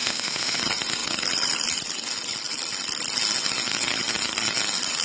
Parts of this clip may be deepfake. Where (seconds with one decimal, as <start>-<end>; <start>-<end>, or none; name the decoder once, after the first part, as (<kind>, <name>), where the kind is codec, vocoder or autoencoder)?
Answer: 0.0-0.6 (autoencoder, DAC-VAE)